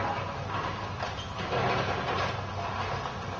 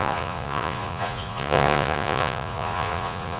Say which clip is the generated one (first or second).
second